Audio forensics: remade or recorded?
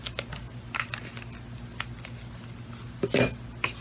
recorded